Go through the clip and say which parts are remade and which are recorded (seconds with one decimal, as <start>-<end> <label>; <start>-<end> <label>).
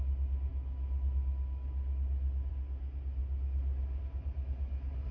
0.0-5.1 recorded